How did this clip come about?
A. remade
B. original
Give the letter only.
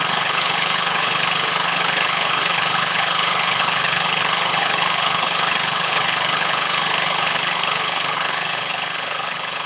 A